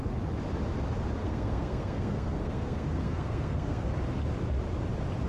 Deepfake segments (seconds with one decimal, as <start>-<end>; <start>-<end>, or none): 1.2-3.9

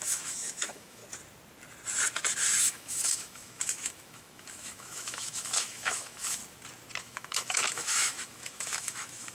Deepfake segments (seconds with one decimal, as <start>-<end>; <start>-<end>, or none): 0.0-1.0; 2.6-6.4; 7.0-9.3

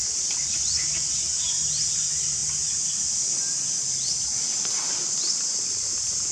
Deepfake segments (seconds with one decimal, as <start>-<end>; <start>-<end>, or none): 0.0-0.6

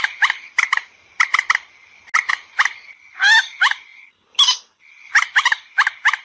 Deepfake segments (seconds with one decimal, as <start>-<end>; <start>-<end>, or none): none

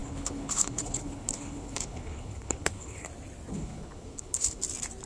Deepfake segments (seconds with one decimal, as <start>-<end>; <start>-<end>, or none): 0.0-3.1; 3.5-4.6

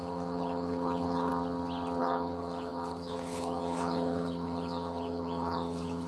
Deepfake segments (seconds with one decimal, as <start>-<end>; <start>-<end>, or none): 0.0-1.3; 2.0-6.1

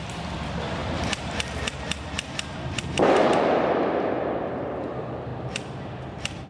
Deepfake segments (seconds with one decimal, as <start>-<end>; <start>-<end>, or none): 0.8-4.6